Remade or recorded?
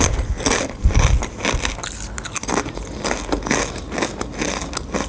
recorded